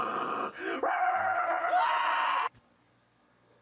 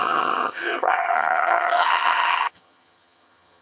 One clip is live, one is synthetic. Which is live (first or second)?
first